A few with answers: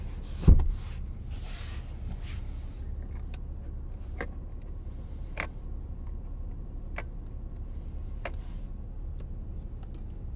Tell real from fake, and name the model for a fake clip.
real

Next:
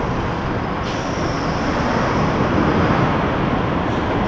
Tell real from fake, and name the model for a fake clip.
real